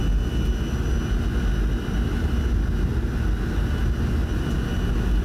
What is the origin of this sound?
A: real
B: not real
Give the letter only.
A